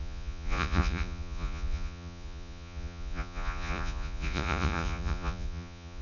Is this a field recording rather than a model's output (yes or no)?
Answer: no